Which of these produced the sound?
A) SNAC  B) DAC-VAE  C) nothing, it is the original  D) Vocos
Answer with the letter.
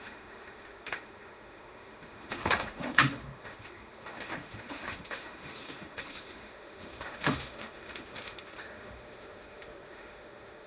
B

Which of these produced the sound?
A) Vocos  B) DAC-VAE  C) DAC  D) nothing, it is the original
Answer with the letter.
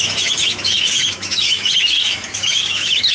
B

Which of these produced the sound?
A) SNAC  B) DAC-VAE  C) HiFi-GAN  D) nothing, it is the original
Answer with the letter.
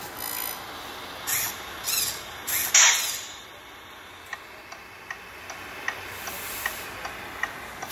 D